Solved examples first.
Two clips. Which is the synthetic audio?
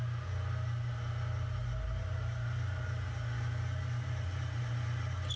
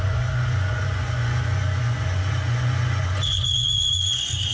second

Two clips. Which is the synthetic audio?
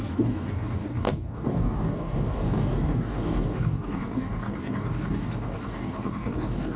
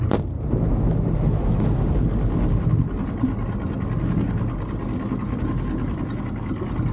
first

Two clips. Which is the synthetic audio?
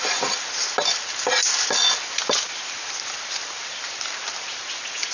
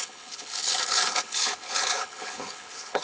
second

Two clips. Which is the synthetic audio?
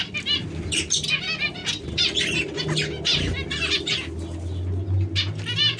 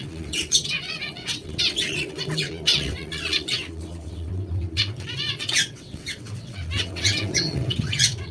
second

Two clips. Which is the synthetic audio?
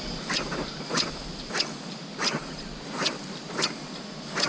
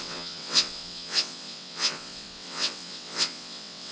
second